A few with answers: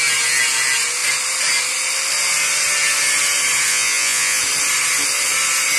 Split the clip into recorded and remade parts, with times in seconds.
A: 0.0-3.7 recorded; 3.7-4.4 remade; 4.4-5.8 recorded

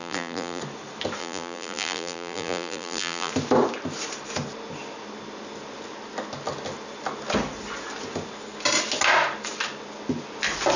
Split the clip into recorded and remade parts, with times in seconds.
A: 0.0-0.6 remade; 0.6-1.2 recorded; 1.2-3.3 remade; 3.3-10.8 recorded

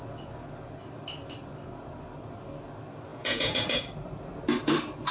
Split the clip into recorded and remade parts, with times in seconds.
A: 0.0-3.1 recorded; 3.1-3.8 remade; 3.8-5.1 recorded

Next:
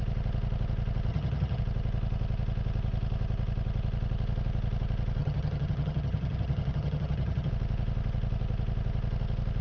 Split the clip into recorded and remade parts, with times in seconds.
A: 0.0-1.1 recorded; 1.1-1.6 remade; 1.6-5.2 recorded; 5.2-7.5 remade; 7.5-9.6 recorded